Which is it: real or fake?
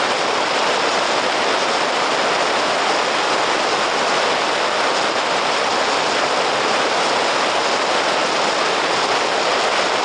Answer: real